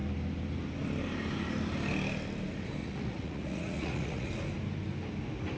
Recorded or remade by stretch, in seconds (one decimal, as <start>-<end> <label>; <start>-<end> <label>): 0.0-2.8 recorded; 2.8-4.3 remade; 4.3-5.6 recorded